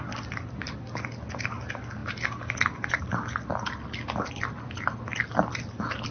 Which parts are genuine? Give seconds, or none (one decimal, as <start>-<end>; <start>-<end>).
0.0-6.1

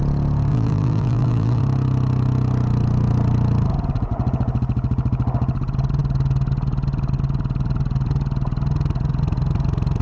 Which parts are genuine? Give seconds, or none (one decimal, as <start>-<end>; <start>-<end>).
0.0-0.5; 1.6-10.0

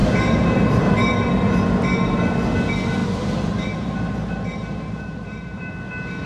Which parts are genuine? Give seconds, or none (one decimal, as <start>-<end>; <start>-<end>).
0.9-3.0; 5.7-6.3

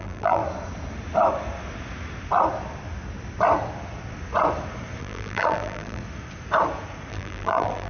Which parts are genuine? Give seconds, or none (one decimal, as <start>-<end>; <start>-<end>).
0.4-5.0; 6.0-7.1

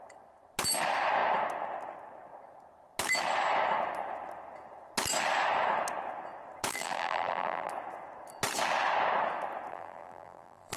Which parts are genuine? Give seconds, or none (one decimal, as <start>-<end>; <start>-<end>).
0.0-6.7; 7.7-9.7

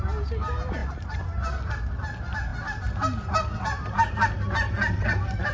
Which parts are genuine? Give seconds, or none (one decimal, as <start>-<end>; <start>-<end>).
0.0-5.5